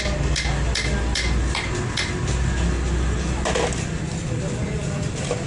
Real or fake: real